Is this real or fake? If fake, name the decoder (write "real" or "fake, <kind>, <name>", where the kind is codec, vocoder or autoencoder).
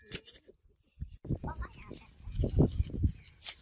real